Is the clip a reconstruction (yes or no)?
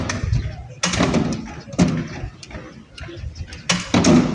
no